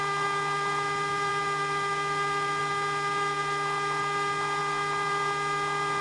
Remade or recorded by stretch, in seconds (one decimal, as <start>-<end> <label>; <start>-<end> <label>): 0.0-6.0 recorded